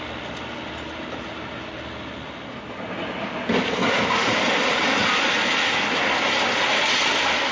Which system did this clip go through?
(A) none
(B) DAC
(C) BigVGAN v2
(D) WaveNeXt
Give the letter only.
A